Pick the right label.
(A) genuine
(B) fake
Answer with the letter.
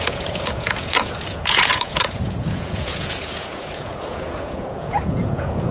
B